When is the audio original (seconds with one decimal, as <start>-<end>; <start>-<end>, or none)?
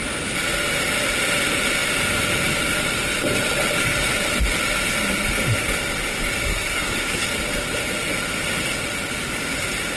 0.0-6.4; 7.2-10.0